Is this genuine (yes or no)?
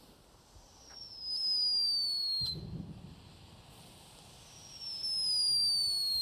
yes